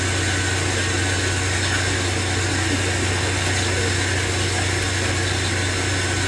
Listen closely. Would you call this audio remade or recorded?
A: recorded